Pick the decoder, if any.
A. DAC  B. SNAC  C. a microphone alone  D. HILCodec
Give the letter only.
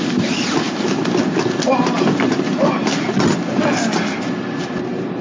C